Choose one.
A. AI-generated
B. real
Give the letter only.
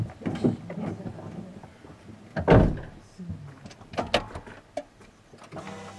B